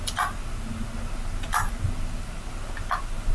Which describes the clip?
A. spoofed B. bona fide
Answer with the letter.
B